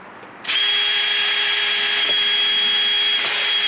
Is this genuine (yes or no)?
yes